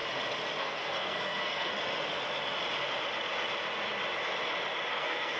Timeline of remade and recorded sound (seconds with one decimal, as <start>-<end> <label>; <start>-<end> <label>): 0.0-0.6 recorded; 0.6-1.7 remade; 1.7-4.9 recorded; 4.9-5.4 remade